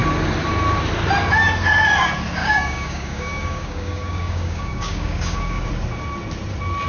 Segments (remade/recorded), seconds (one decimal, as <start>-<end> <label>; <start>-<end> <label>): 0.0-2.4 recorded; 2.4-5.7 remade; 5.7-6.9 recorded